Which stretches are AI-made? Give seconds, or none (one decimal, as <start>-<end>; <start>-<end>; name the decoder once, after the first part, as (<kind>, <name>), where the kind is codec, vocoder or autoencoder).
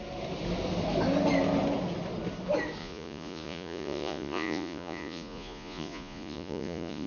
2.8-7.1 (vocoder, Vocos)